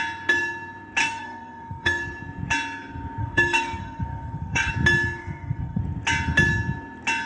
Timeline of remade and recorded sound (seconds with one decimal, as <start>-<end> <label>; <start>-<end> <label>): 0.0-1.0 recorded; 1.0-2.0 remade; 2.0-3.2 recorded; 3.2-4.7 remade; 4.7-5.2 recorded; 5.2-5.8 remade; 5.8-7.3 recorded